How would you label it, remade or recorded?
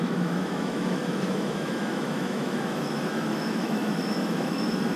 remade